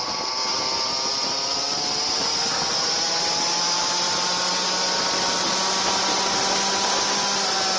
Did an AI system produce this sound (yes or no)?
no